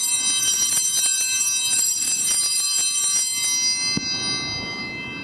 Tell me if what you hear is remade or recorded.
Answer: recorded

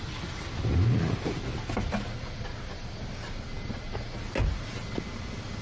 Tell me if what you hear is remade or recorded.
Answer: recorded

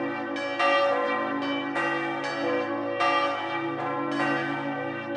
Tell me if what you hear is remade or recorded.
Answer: recorded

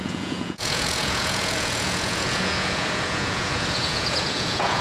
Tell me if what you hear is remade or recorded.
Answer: remade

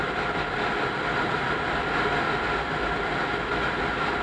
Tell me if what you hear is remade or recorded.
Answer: recorded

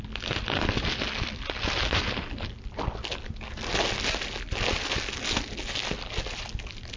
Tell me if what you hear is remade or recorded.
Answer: recorded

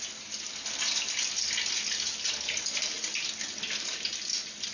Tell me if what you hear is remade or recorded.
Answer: recorded